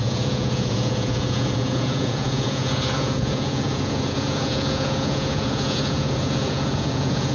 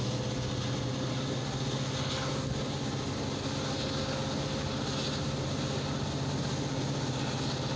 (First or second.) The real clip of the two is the second